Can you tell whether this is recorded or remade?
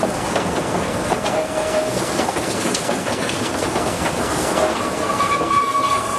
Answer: remade